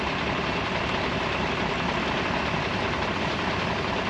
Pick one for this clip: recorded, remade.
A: remade